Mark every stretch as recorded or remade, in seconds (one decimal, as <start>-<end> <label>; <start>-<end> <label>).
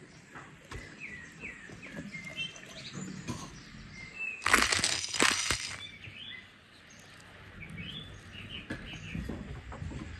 0.0-10.2 recorded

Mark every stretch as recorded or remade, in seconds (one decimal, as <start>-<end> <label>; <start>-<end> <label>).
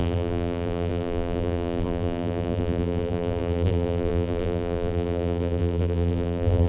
0.0-6.7 remade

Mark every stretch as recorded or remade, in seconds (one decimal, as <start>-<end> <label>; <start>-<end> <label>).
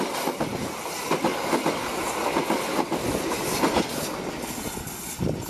0.0-5.5 recorded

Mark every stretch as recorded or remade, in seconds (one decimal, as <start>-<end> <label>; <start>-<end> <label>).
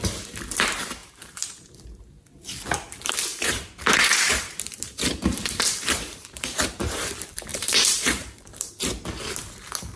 0.0-1.0 recorded; 1.0-1.7 remade; 1.7-3.3 recorded; 3.3-7.1 remade; 7.1-7.5 recorded; 7.5-8.7 remade; 8.7-10.0 recorded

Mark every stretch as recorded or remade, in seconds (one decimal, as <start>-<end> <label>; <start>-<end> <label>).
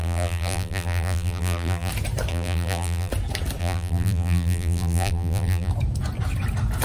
0.0-1.9 remade; 1.9-2.3 recorded; 2.3-3.1 remade; 3.1-3.6 recorded; 3.6-5.7 remade; 5.7-6.8 recorded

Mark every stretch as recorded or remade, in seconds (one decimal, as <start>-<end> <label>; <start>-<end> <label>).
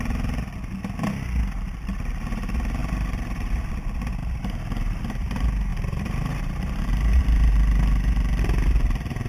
0.0-2.8 recorded; 2.8-3.7 remade; 3.7-4.2 recorded; 4.2-5.3 remade; 5.3-5.7 recorded; 5.7-7.2 remade; 7.2-9.3 recorded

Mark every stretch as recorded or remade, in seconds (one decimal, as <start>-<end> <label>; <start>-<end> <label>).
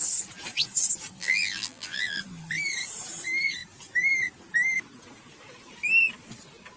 0.0-1.2 recorded; 1.2-2.2 remade; 2.2-6.8 recorded